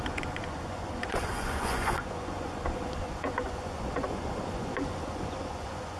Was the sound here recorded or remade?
remade